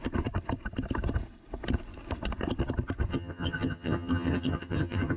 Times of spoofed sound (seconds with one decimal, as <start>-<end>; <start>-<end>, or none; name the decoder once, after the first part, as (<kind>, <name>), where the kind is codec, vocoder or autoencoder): 3.1-5.2 (vocoder, HiFi-GAN)